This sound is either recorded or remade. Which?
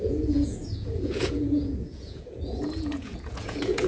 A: remade